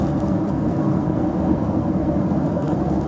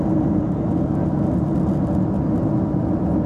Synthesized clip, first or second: first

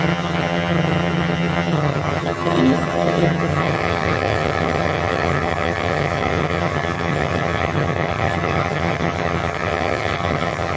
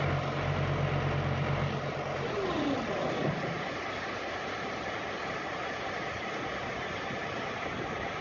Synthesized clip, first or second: first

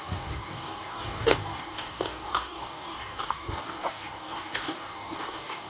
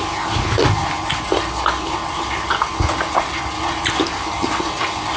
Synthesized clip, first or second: first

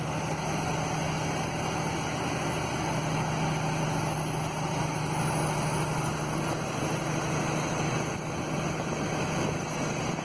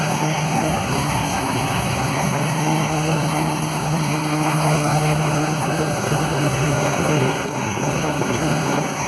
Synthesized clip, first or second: second